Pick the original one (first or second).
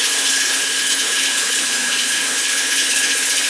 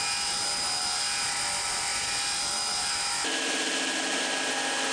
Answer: second